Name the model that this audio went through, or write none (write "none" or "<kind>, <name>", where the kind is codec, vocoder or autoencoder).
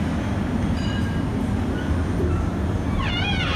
none